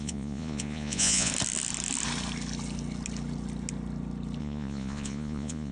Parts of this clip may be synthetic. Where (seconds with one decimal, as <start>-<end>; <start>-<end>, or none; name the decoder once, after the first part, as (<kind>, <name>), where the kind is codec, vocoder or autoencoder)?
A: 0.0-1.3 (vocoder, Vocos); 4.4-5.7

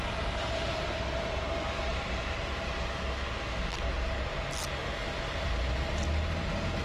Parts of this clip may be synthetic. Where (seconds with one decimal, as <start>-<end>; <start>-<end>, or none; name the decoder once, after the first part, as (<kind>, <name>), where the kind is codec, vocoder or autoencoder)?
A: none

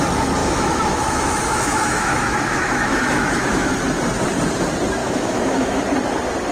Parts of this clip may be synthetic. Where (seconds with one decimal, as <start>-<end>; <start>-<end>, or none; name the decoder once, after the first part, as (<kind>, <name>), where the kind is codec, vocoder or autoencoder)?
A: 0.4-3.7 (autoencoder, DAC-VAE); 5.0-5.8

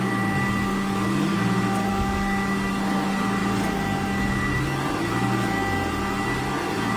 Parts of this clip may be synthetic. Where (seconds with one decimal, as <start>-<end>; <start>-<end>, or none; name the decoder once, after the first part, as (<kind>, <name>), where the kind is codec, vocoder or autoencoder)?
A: 1.9-2.7 (codec, DAC)